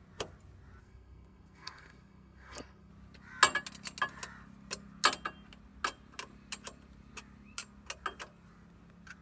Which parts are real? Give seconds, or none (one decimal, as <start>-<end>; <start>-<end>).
0.0-0.8; 2.9-9.2